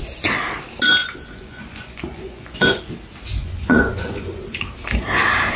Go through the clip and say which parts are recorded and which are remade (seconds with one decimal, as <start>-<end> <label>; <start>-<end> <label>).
0.0-1.0 recorded; 1.0-2.8 remade; 2.8-3.4 recorded; 3.4-4.4 remade; 4.4-5.6 recorded